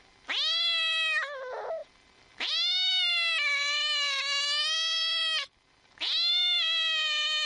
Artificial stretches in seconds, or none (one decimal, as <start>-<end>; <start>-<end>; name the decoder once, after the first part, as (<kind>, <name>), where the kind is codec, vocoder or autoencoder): none